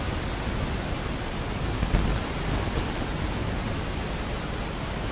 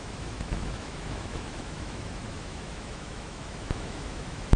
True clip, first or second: first